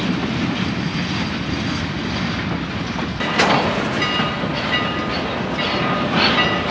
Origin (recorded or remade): recorded